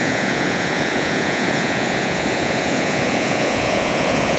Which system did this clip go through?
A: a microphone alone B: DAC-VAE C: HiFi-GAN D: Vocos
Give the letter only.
D